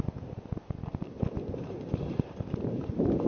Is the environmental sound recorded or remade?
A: recorded